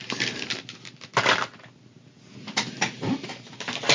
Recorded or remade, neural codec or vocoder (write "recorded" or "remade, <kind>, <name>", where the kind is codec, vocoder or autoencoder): recorded